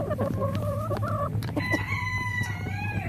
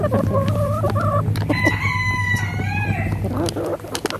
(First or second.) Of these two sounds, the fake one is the first